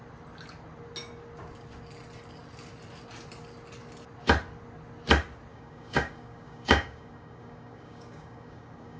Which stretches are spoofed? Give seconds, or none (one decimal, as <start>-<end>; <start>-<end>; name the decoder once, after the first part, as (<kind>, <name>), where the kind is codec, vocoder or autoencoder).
5.5-9.0 (codec, DAC)